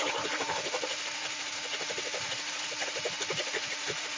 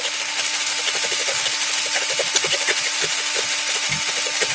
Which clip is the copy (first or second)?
first